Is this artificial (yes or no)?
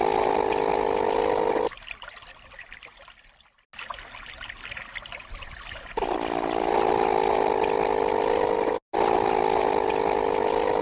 no